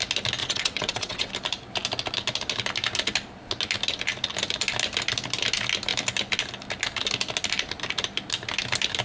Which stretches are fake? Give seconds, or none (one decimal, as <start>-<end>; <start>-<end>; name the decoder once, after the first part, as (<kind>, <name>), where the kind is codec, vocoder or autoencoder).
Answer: 0.4-1.3 (vocoder, WaveNeXt)